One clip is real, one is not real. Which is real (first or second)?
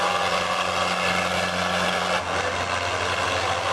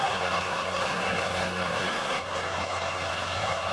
first